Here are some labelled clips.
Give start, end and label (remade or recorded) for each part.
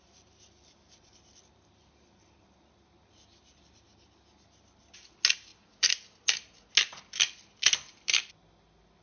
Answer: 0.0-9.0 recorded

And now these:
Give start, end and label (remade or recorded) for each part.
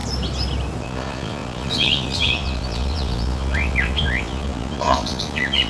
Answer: 0.0-0.8 recorded; 0.8-5.7 remade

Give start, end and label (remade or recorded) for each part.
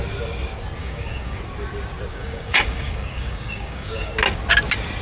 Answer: 0.0-0.8 recorded; 0.8-1.4 remade; 1.4-2.1 recorded; 2.1-4.1 remade; 4.1-5.0 recorded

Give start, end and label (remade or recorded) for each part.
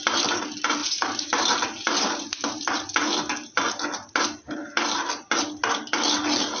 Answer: 0.0-0.8 recorded; 0.8-2.2 remade; 2.2-4.6 recorded; 4.6-5.3 remade; 5.3-6.6 recorded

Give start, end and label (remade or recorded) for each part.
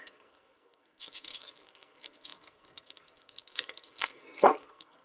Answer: 0.0-5.0 remade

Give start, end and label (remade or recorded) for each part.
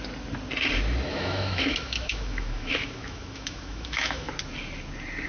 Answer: 0.0-1.1 recorded; 1.1-4.3 remade; 4.3-5.3 recorded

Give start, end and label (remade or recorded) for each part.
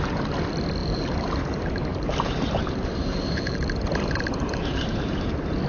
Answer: 0.0-0.8 recorded; 0.8-1.4 remade; 1.4-1.9 recorded; 1.9-5.3 remade; 5.3-5.7 recorded